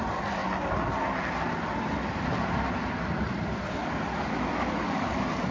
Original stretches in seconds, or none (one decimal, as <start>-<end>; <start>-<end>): 0.4-3.1; 3.8-4.8